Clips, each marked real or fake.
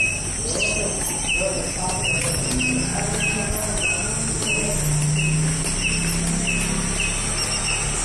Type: real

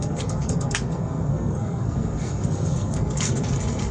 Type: fake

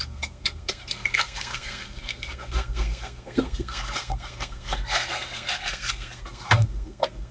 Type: fake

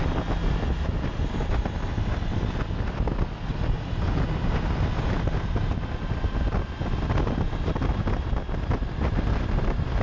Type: real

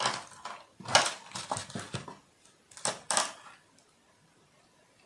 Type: real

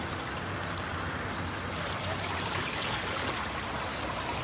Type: real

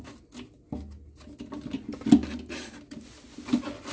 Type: real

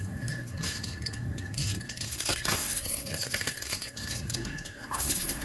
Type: fake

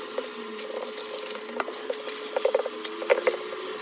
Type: real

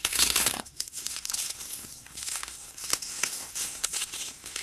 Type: fake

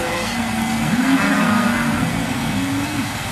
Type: fake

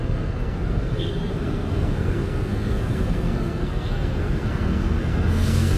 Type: fake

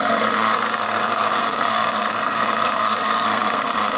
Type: fake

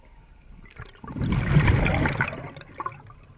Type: real